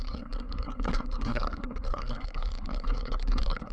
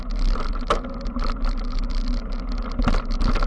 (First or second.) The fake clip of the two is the first